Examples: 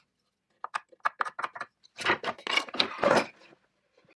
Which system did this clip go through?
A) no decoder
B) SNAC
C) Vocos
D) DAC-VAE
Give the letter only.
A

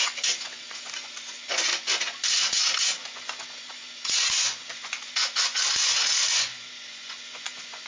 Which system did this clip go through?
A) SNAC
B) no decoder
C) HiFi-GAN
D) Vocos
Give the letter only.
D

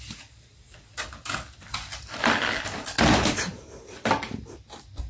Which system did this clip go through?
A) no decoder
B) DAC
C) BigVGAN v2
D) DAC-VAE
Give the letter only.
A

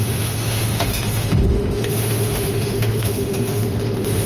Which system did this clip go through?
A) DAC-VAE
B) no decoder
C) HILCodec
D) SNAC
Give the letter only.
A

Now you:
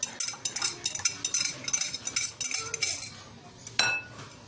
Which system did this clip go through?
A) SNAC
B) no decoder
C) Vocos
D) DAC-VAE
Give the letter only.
B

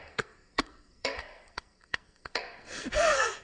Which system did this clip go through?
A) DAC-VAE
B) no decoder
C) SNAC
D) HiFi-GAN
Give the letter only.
C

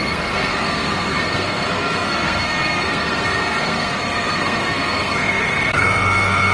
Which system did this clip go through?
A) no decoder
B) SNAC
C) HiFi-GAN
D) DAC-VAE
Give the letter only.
B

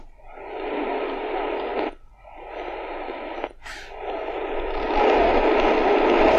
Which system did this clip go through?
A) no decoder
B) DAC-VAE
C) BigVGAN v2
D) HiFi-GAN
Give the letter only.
A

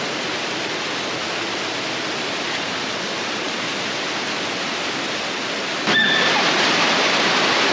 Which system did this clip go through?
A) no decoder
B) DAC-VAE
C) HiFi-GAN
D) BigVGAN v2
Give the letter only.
A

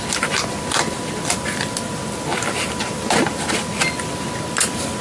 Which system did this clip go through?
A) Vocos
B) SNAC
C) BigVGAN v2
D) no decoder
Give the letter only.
D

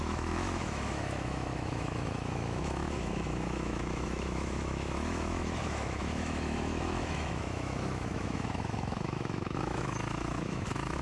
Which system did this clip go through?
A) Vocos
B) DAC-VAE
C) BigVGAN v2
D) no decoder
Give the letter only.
B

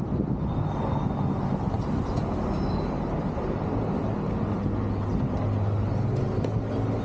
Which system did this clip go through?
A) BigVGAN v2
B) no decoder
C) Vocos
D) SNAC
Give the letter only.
B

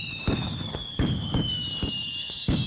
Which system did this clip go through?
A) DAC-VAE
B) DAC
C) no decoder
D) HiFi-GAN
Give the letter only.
B